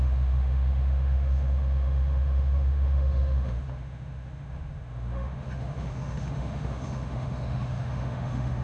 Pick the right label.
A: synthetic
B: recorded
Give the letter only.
A